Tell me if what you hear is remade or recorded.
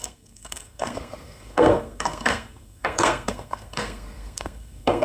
remade